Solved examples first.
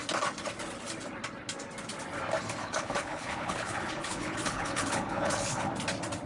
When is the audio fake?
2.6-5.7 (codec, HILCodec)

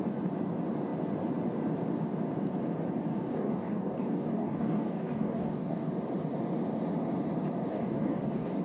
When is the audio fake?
3.1-5.9 (codec, DAC); 7.7-8.6

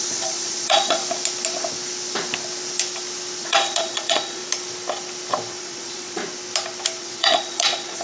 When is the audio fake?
0.0-1.0 (vocoder, Vocos); 3.4-4.4; 5.5-6.2; 7.0-8.0

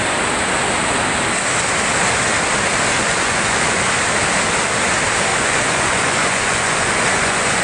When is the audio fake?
2.9-3.8 (vocoder, Vocos); 5.3-7.6

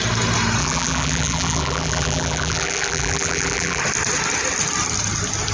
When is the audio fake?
0.6-3.8 (vocoder, BigVGAN v2)